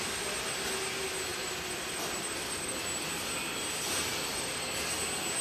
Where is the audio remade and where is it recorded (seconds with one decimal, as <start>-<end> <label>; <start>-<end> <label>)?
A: 0.0-1.3 recorded; 1.3-3.1 remade; 3.1-4.1 recorded; 4.1-4.9 remade; 4.9-5.4 recorded